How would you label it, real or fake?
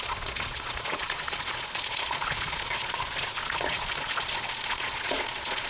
fake